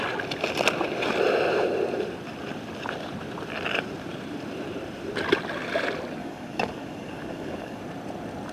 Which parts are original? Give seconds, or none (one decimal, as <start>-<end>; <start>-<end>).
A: 0.0-6.2; 7.8-8.5